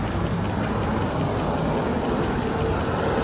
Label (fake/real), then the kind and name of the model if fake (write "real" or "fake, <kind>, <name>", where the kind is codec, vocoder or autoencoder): real